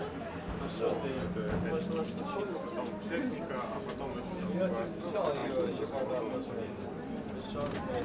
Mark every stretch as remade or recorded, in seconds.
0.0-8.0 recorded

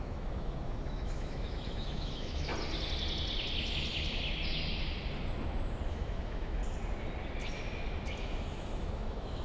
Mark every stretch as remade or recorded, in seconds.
0.0-2.5 remade; 2.5-5.9 recorded; 5.9-6.6 remade; 6.6-8.2 recorded; 8.2-9.4 remade

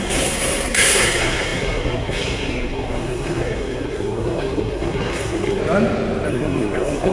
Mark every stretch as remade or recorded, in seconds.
0.0-5.6 remade; 5.6-6.3 recorded; 6.3-7.1 remade

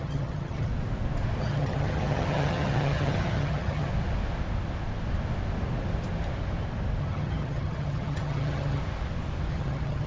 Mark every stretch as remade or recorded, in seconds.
0.0-0.7 remade; 0.7-1.4 recorded; 1.4-3.9 remade; 3.9-7.0 recorded; 7.0-8.8 remade; 8.8-9.5 recorded; 9.5-10.1 remade

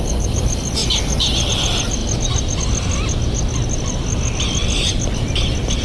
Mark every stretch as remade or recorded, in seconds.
0.0-5.8 recorded

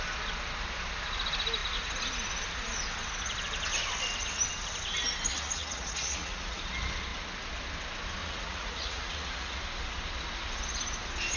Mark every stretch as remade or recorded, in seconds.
0.0-5.3 recorded; 5.3-6.6 remade; 6.6-8.2 recorded; 8.2-9.6 remade; 9.6-11.4 recorded

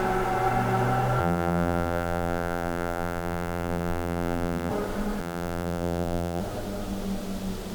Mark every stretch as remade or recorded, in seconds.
0.0-1.2 recorded; 1.2-4.7 remade; 4.7-5.2 recorded; 5.2-6.4 remade; 6.4-7.7 recorded